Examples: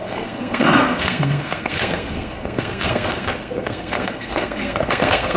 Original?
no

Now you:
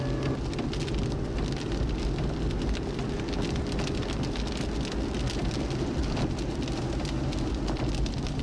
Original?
yes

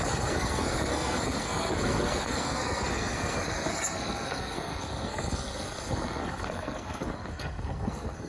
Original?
no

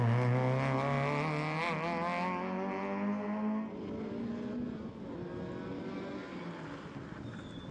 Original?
yes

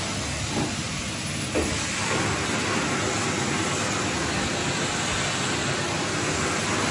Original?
yes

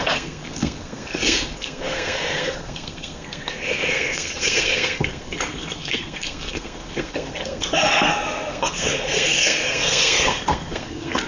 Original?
no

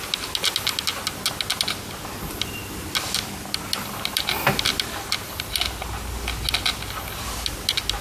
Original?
yes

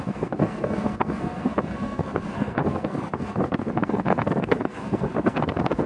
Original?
no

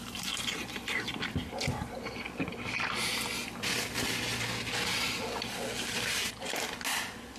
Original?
yes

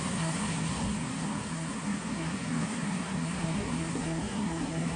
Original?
no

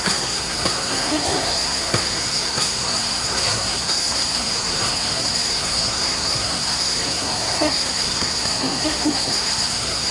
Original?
no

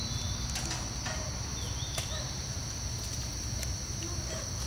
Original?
yes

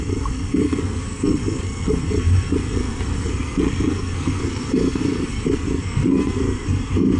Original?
no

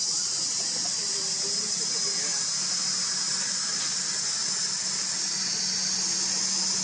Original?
yes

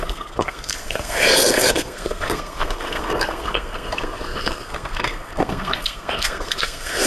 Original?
no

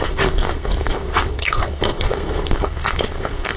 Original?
no